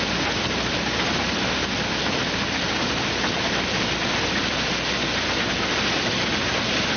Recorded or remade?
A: recorded